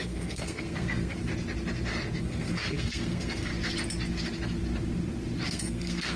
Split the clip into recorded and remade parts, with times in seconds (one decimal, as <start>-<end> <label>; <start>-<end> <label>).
0.0-1.3 remade; 1.3-2.2 recorded; 2.2-3.5 remade; 3.5-5.5 recorded; 5.5-6.2 remade